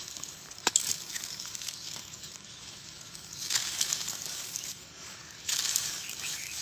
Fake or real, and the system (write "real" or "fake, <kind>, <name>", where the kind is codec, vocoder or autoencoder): fake, codec, DAC